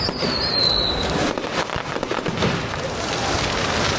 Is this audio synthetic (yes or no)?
yes